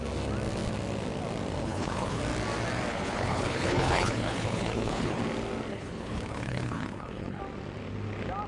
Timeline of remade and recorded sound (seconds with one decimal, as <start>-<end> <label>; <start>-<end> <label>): 0.0-1.6 recorded; 1.6-2.2 remade; 2.2-2.9 recorded; 2.9-5.2 remade; 5.2-5.7 recorded; 5.7-7.4 remade; 7.4-8.5 recorded

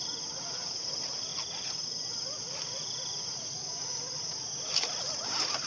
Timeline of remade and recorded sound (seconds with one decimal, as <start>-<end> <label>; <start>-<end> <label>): 0.0-1.3 remade; 1.3-4.7 recorded; 4.7-5.7 remade